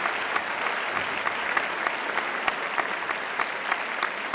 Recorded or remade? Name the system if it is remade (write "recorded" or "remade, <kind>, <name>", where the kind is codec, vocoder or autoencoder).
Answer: recorded